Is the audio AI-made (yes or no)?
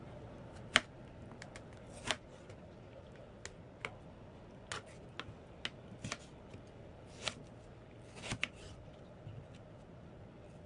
no